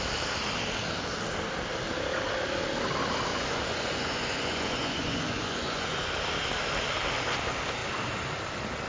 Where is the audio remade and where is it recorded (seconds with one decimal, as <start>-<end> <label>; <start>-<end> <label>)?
0.0-3.3 recorded; 3.3-6.1 remade; 6.1-8.9 recorded